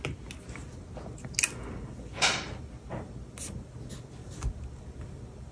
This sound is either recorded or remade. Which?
recorded